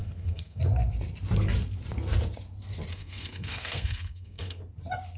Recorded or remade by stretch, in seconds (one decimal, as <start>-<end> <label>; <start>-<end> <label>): 0.0-0.6 remade; 0.6-2.9 recorded; 2.9-4.6 remade; 4.6-5.2 recorded